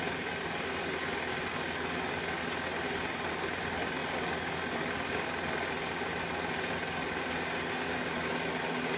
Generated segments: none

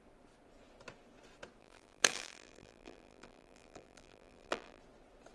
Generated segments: 1.6-4.8 (vocoder, BigVGAN v2)

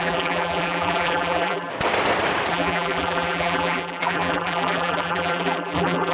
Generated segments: 0.0-1.7 (vocoder, BigVGAN v2); 2.5-6.1

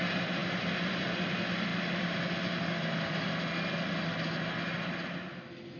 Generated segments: none

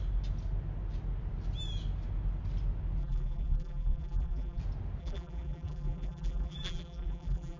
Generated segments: 3.0-4.6 (vocoder, BigVGAN v2); 5.0-7.6

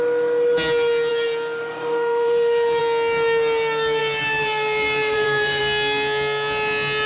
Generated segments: 1.1-2.8 (vocoder, BigVGAN v2); 4.0-5.6